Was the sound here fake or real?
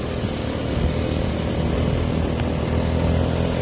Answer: real